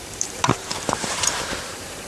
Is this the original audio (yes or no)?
no